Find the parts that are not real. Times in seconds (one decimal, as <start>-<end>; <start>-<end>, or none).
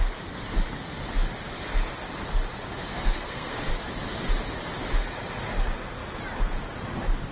2.9-3.7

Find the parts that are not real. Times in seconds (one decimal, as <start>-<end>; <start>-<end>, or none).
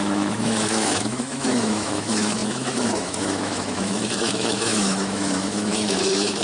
0.0-6.4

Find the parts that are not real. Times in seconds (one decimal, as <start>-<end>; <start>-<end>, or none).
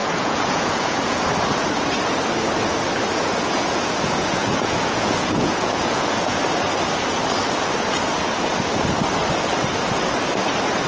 0.0-1.3; 3.1-6.4